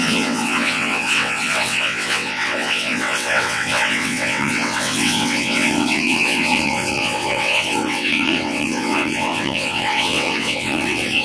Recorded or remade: remade